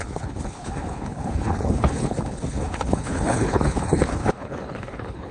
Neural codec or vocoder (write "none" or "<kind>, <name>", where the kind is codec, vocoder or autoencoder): codec, HILCodec